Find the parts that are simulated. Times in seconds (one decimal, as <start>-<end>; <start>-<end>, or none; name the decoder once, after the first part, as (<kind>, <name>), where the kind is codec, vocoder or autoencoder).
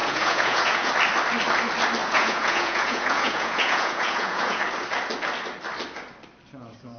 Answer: 0.0-0.9 (vocoder, Vocos); 2.0-4.6